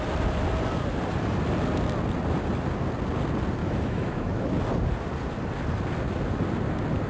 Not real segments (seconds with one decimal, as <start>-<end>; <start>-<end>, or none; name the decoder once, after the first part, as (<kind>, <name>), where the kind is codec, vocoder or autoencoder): 3.6-4.6 (autoencoder, DAC-VAE)